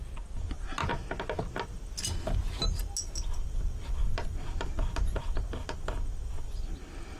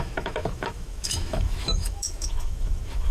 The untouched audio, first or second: first